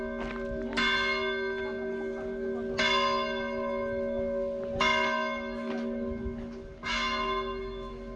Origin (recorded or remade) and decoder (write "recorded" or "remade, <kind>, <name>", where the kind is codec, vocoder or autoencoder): recorded